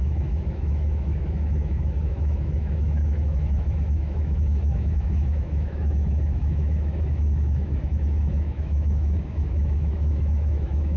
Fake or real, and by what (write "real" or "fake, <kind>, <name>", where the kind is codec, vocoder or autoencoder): fake, autoencoder, DAC-VAE